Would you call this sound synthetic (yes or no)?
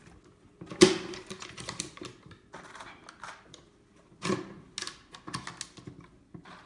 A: no